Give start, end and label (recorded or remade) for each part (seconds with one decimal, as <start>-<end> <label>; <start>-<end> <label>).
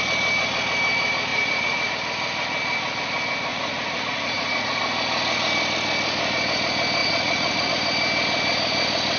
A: 0.0-1.3 recorded; 1.3-1.9 remade; 1.9-3.5 recorded; 3.5-4.8 remade; 4.8-7.0 recorded; 7.0-7.7 remade; 7.7-9.2 recorded